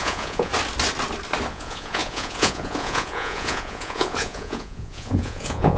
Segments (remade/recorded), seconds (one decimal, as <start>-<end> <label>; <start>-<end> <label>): 0.0-0.5 remade; 0.5-1.5 recorded; 1.5-5.8 remade